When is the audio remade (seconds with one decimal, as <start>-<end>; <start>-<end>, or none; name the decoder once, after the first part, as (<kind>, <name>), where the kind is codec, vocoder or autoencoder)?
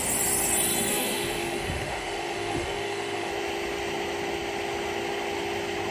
0.9-3.3 (autoencoder, DAC-VAE)